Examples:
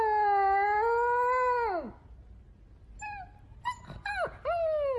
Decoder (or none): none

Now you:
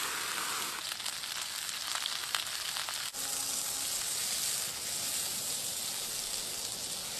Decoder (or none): none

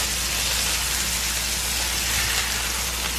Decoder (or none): none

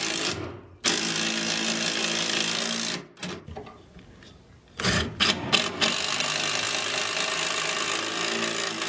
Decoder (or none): none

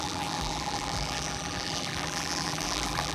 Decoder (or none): vocoder, BigVGAN v2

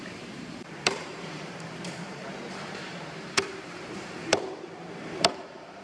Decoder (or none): vocoder, BigVGAN v2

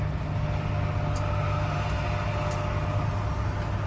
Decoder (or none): none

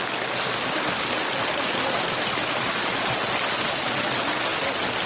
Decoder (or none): none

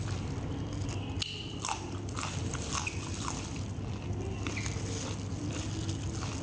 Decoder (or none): none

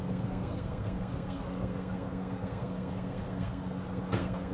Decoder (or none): codec, SNAC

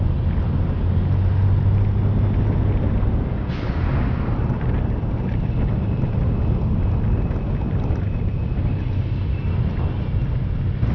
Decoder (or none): none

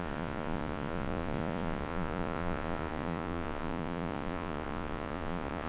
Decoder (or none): vocoder, Vocos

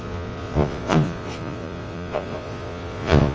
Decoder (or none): vocoder, Vocos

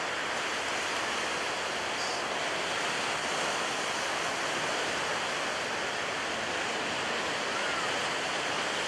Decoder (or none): none